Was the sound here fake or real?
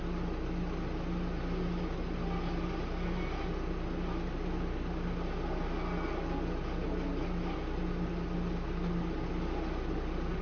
real